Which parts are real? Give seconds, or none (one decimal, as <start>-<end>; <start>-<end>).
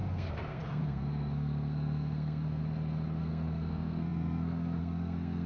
2.6-3.2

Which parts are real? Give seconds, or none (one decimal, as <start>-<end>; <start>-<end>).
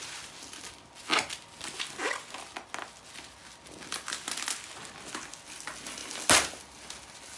0.0-7.4